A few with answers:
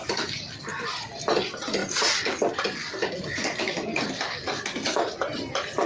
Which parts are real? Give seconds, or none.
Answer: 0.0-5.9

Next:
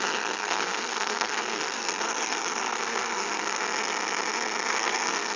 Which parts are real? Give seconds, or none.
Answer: 0.0-0.4; 3.6-4.7

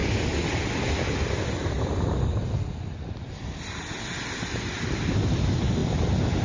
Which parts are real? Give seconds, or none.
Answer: 0.0-6.4

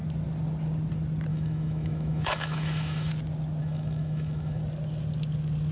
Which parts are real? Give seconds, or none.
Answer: 0.0-1.3; 3.1-3.6; 4.6-5.7